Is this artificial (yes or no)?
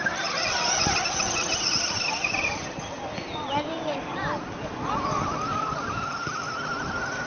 no